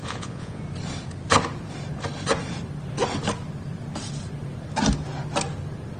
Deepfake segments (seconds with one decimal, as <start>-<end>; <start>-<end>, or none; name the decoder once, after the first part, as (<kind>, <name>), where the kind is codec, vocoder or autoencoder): 0.0-0.6 (vocoder, Vocos)